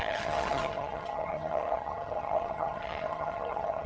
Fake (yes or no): yes